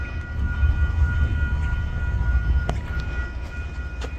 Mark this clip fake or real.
real